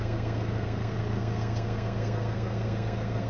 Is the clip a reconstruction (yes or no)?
yes